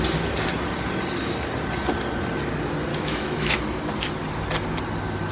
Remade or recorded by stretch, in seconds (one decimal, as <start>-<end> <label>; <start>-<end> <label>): 0.0-2.9 recorded; 2.9-3.6 remade; 3.6-5.3 recorded